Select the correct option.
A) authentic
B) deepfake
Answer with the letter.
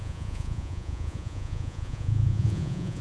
B